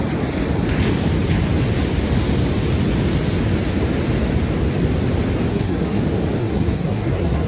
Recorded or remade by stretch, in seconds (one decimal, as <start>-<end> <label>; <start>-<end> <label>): 0.0-5.5 recorded; 5.5-6.0 remade; 6.0-6.4 recorded; 6.4-7.5 remade

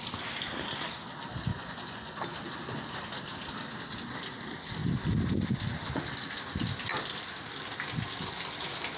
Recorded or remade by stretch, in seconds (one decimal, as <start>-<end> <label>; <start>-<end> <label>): 0.0-1.5 recorded; 1.5-2.2 remade; 2.2-9.0 recorded

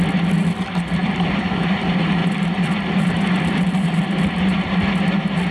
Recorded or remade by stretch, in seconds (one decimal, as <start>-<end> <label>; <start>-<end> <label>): 0.0-1.0 recorded; 1.0-1.6 remade; 1.6-2.2 recorded; 2.2-4.2 remade; 4.2-5.5 recorded

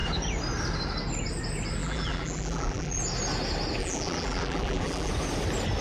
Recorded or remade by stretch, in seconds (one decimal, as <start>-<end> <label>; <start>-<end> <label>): 0.0-1.8 recorded; 1.8-3.0 remade; 3.0-3.8 recorded; 3.8-5.1 remade; 5.1-5.8 recorded